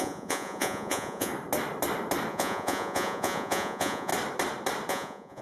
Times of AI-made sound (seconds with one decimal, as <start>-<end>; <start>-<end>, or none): 0.0-1.3; 2.3-4.1; 4.9-5.4